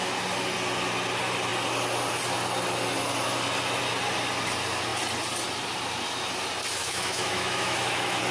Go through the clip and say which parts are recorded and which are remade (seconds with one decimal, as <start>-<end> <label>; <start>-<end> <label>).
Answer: 0.0-6.8 recorded; 6.8-8.3 remade